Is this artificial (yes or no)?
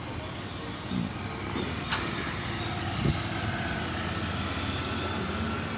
no